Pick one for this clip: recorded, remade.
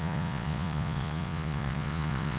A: remade